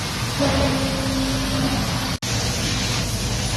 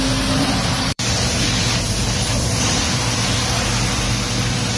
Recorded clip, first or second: first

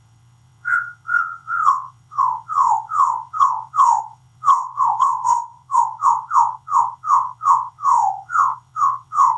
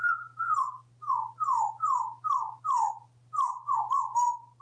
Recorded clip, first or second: second